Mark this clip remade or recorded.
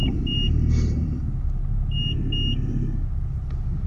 recorded